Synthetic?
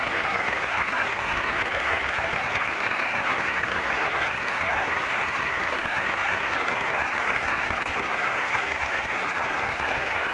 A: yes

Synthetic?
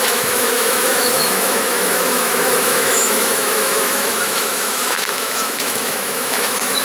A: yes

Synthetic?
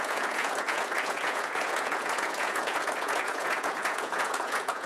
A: yes